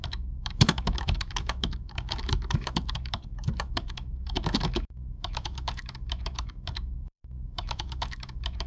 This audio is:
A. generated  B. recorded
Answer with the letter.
A